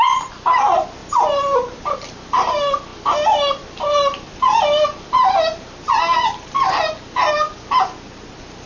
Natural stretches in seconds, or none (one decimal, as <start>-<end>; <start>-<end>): 0.0-8.7